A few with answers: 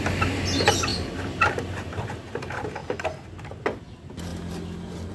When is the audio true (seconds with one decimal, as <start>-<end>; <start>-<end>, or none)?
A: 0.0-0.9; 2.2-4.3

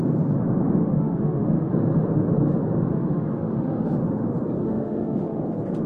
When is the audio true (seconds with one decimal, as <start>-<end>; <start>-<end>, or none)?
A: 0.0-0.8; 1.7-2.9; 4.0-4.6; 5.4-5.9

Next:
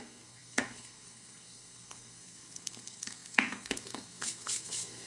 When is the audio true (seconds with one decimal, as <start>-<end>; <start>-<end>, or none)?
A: none